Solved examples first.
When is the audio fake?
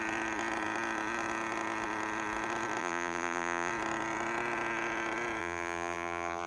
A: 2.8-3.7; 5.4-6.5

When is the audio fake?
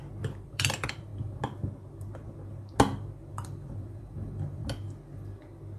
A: 0.0-1.1; 3.3-4.6